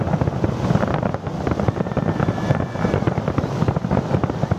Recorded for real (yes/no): yes